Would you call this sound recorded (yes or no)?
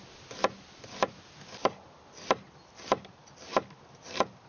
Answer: yes